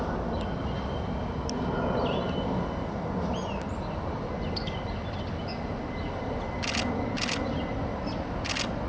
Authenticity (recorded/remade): recorded